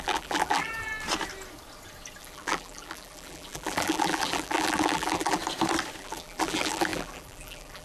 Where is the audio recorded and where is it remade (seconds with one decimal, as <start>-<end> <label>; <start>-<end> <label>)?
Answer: 0.0-0.9 remade; 0.9-2.2 recorded; 2.2-5.4 remade; 5.4-6.0 recorded; 6.0-7.8 remade